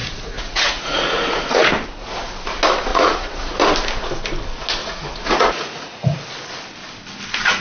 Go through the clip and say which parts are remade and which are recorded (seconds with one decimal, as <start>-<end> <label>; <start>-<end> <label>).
0.0-1.7 remade; 1.7-2.9 recorded; 2.9-3.5 remade; 3.5-4.8 recorded; 4.8-6.2 remade; 6.2-7.6 recorded